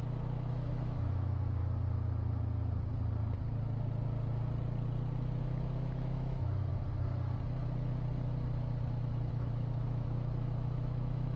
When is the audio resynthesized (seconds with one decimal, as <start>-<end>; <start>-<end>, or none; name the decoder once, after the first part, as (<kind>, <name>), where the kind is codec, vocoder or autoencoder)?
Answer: 0.0-1.6 (autoencoder, DAC-VAE); 5.4-6.7; 9.3-11.4